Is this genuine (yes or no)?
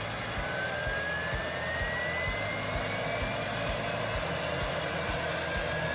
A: yes